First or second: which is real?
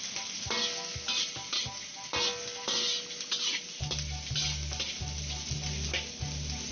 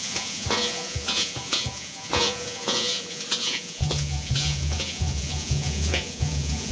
first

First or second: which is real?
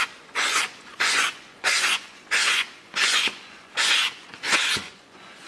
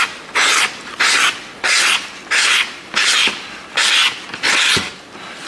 second